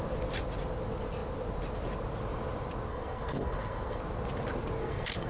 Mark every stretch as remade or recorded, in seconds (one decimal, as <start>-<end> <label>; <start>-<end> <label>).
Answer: 0.0-2.9 recorded; 2.9-4.0 remade; 4.0-4.8 recorded; 4.8-5.3 remade